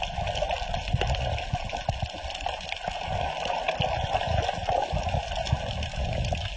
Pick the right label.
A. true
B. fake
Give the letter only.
A